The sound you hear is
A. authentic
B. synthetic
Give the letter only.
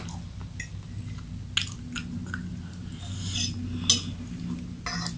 A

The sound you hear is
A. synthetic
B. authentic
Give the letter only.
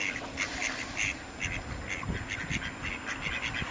B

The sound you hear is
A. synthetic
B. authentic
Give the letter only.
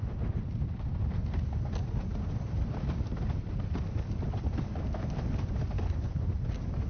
B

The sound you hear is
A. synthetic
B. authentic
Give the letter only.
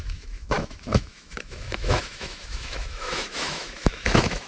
A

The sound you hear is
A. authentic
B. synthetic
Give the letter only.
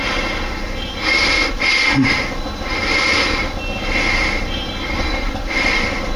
A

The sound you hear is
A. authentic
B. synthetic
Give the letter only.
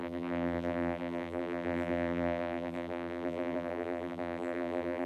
B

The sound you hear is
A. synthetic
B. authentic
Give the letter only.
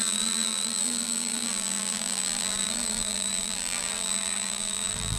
A